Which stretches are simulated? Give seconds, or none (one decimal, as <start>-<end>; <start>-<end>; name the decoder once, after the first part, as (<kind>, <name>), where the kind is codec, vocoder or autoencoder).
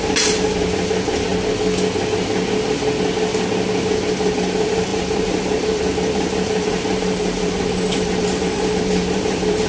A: 0.0-1.3 (vocoder, BigVGAN v2); 3.8-9.7